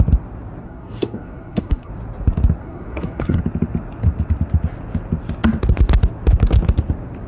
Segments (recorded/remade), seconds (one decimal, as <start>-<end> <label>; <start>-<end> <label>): 0.0-0.6 recorded; 0.6-1.9 remade; 1.9-2.6 recorded; 2.6-3.4 remade; 3.4-7.3 recorded